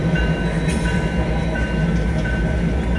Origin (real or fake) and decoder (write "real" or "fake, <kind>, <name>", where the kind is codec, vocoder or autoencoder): real